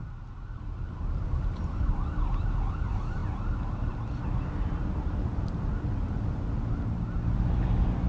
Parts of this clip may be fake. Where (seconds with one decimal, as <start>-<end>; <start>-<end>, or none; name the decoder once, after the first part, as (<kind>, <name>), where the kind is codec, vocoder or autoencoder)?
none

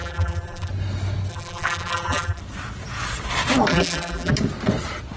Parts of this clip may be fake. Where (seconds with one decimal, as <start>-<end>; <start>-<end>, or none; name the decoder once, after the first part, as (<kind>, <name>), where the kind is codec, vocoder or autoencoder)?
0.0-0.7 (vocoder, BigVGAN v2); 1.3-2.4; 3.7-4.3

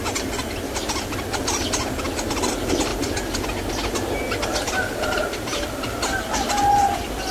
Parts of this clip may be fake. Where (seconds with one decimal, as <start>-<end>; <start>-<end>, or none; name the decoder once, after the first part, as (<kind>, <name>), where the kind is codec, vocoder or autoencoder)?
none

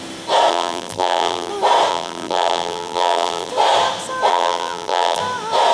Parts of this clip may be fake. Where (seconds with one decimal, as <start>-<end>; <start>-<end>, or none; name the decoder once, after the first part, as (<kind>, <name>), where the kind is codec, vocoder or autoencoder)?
0.5-1.5 (vocoder, BigVGAN v2); 1.9-3.5; 4.3-5.2

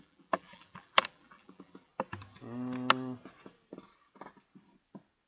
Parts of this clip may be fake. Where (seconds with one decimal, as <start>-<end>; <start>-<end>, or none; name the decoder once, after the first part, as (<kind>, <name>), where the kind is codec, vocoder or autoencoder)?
0.0-1.9 (vocoder, BigVGAN v2)